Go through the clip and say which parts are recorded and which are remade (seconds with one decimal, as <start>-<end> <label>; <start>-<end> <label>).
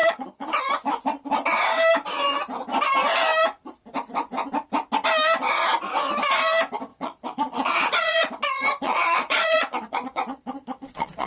0.0-0.7 remade; 0.7-6.9 recorded; 6.9-11.3 remade